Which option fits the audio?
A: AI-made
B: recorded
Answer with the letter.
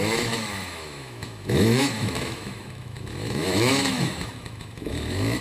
A